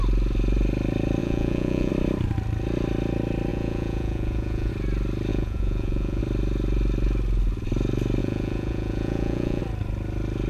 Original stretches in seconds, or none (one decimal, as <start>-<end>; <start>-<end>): 0.0-1.2; 1.9-3.5; 4.7-5.3; 6.2-8.2; 9.6-10.5